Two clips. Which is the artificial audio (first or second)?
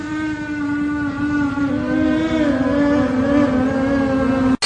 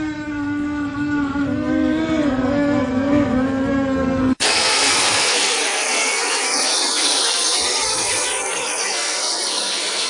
second